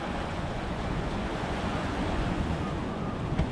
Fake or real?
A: fake